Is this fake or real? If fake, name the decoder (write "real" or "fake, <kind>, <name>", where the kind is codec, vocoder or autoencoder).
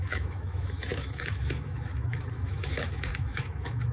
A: fake, autoencoder, DAC-VAE